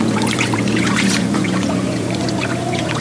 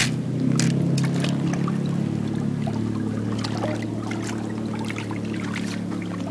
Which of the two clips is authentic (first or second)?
second